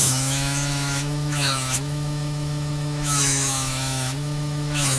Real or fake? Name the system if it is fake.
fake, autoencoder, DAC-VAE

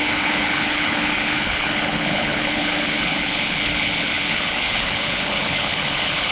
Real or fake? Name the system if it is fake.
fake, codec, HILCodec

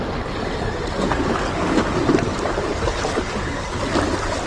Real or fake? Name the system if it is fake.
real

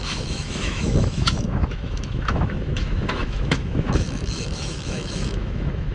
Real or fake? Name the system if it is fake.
fake, autoencoder, DAC-VAE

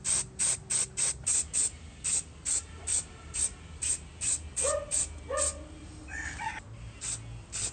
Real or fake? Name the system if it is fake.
real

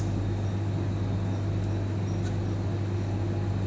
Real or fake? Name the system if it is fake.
real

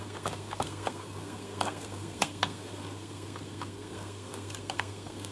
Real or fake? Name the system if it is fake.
fake, codec, SNAC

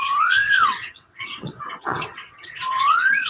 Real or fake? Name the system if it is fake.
fake, vocoder, WaveNeXt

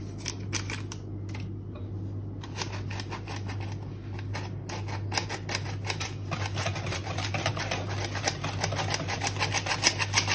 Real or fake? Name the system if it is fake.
real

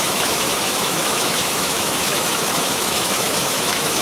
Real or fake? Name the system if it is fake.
fake, autoencoder, DAC-VAE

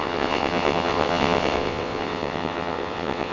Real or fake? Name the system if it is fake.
fake, vocoder, WaveNeXt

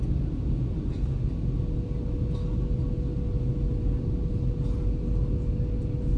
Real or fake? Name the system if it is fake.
real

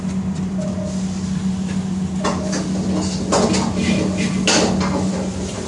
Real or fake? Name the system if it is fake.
real